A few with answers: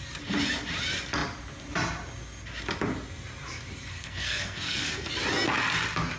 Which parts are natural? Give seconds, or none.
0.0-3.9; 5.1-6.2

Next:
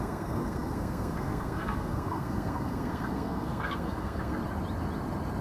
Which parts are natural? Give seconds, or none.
4.4-5.4

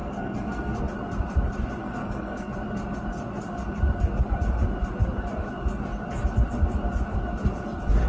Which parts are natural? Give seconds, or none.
0.8-1.8; 2.5-8.1

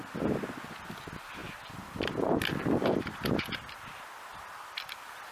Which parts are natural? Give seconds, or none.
0.0-5.3

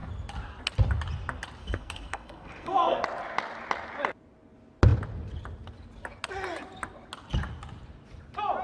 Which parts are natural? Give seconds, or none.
0.0-1.6; 3.0-8.6

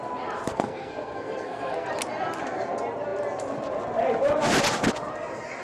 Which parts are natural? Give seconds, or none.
0.0-0.5; 1.9-5.6

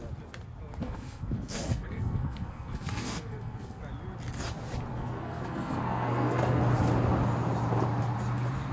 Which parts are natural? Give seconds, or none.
0.0-0.8; 3.8-4.9; 6.6-8.7